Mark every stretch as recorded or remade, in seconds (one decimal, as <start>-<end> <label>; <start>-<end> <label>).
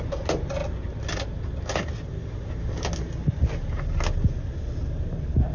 0.0-5.5 recorded